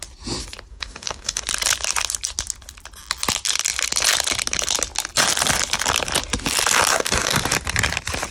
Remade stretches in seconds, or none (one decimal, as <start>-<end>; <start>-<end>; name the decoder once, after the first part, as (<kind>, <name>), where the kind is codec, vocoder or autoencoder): 0.7-1.4 (codec, DAC); 6.9-7.4